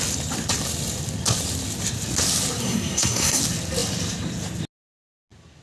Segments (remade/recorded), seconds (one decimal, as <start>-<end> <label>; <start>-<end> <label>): 0.0-2.6 recorded; 2.6-3.4 remade; 3.4-5.6 recorded